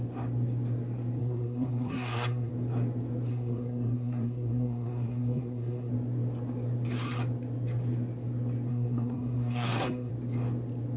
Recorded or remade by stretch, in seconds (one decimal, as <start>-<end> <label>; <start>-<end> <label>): 0.0-1.2 recorded; 1.2-2.5 remade; 2.5-3.3 recorded; 3.3-5.9 remade; 5.9-8.7 recorded; 8.7-10.1 remade; 10.1-11.0 recorded